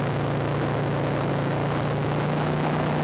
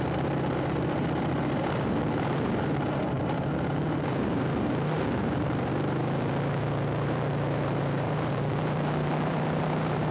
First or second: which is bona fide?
first